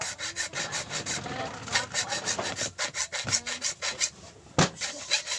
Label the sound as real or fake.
real